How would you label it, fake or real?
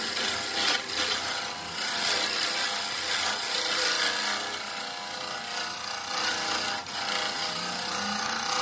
real